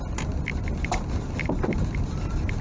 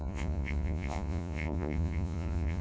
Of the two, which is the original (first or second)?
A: first